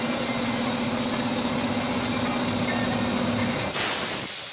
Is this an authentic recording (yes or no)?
yes